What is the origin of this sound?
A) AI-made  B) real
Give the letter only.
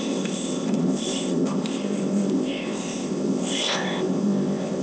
A